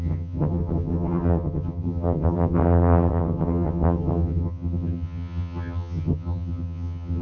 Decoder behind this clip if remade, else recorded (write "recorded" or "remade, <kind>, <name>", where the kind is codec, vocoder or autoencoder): remade, vocoder, HiFi-GAN